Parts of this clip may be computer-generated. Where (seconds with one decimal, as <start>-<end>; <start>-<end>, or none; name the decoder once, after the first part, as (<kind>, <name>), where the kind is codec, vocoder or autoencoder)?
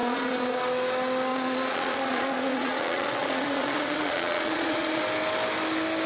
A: 0.0-0.6 (vocoder, Vocos); 1.3-5.0